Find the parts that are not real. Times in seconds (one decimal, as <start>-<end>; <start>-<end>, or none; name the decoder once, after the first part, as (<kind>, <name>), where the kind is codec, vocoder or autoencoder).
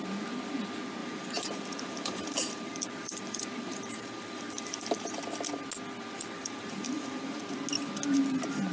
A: 1.0-5.2 (vocoder, BigVGAN v2); 6.4-7.4